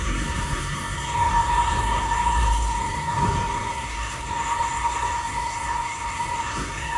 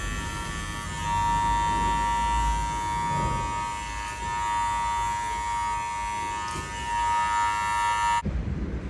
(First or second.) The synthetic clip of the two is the first